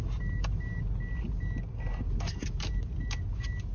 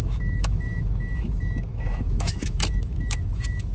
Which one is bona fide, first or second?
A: first